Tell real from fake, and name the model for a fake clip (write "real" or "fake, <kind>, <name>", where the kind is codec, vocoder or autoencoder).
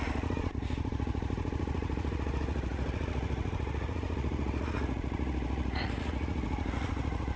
fake, vocoder, Vocos